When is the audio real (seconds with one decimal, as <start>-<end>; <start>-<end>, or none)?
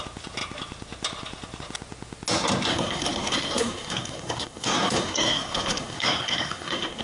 0.0-2.7